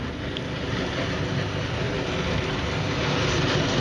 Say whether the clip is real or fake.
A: real